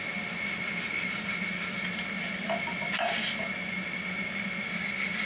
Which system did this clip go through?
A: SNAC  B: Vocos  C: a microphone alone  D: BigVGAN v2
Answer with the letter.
C